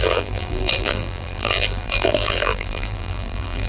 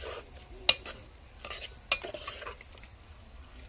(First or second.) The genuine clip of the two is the second